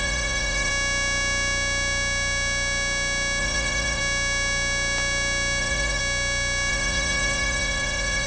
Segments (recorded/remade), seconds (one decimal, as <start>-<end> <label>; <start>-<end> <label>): 0.0-0.7 remade; 0.7-3.4 recorded; 3.4-4.0 remade; 4.0-5.6 recorded; 5.6-6.0 remade; 6.0-6.7 recorded; 6.7-8.3 remade